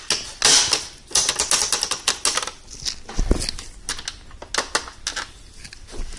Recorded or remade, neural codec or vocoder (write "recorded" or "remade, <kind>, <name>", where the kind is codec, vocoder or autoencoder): recorded